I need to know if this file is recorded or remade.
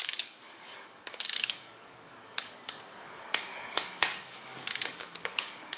remade